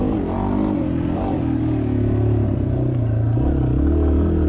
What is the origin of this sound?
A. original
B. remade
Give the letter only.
A